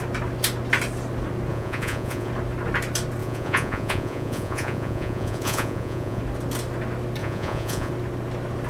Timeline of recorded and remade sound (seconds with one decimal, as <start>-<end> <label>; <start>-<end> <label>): 0.0-1.5 recorded; 1.5-2.3 remade; 2.3-3.2 recorded; 3.2-6.2 remade; 6.2-7.2 recorded; 7.2-7.9 remade; 7.9-8.7 recorded